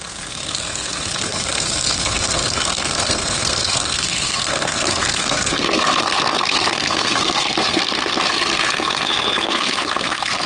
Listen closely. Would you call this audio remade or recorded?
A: remade